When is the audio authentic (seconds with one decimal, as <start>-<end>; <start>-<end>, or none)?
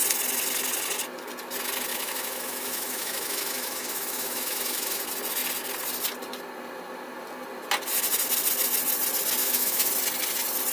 0.0-1.9; 5.0-9.4; 9.9-10.7